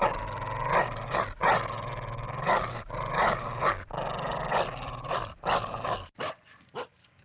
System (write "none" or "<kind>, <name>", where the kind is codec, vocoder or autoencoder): none